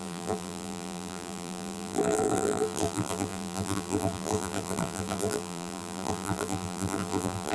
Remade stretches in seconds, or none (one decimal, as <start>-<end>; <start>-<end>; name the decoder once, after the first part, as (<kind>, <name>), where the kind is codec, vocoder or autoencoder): 0.0-7.5 (vocoder, BigVGAN v2)